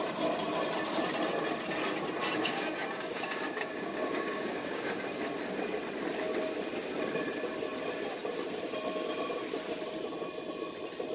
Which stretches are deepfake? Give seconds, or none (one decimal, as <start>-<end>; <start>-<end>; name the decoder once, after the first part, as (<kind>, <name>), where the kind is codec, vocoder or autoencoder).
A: 2.2-5.2 (codec, DAC)